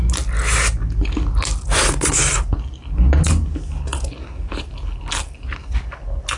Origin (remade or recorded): recorded